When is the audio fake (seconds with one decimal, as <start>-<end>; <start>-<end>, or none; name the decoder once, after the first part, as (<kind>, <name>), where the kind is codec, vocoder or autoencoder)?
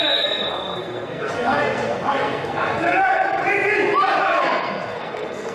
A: 0.0-3.4 (codec, SNAC); 4.2-5.5